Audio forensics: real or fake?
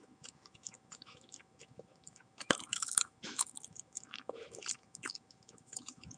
fake